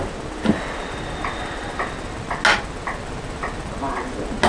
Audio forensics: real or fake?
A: real